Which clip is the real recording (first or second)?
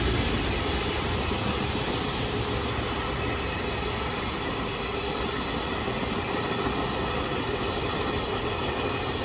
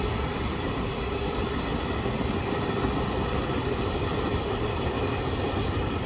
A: first